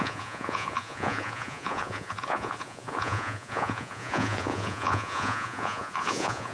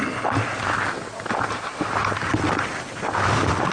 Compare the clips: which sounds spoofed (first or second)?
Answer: first